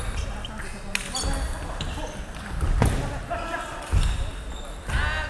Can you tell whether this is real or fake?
real